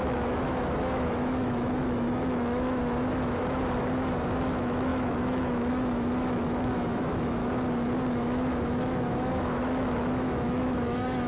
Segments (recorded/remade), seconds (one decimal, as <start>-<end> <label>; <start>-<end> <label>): 0.0-7.4 remade; 7.4-8.0 recorded; 8.0-11.3 remade